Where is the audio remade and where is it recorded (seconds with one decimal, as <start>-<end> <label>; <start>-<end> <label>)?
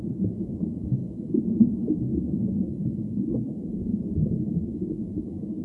0.0-5.6 recorded